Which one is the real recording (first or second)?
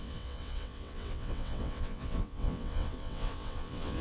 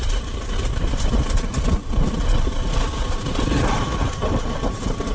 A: second